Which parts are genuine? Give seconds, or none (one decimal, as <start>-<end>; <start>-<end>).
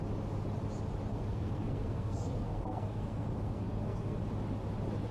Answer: 0.0-1.1; 4.2-5.1